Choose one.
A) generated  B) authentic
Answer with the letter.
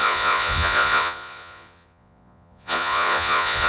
A